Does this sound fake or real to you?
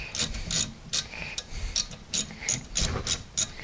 real